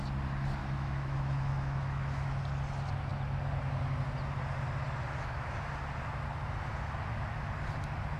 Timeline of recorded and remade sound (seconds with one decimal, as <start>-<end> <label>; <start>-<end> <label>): 0.0-0.6 recorded; 0.6-2.4 remade; 2.4-8.2 recorded